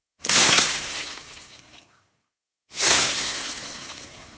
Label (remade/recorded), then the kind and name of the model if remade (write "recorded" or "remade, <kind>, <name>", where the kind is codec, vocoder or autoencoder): remade, codec, SNAC